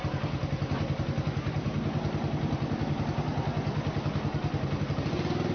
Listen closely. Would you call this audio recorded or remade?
recorded